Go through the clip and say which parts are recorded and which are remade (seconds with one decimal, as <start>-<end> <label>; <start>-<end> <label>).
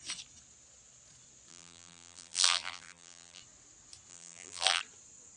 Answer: 0.0-1.5 recorded; 1.5-3.4 remade; 3.4-4.1 recorded; 4.1-4.8 remade; 4.8-5.4 recorded